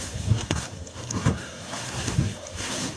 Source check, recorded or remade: remade